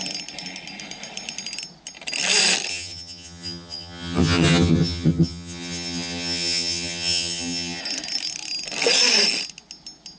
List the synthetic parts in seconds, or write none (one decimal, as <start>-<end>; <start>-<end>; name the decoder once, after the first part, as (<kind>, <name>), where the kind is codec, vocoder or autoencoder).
2.7-7.8 (vocoder, HiFi-GAN)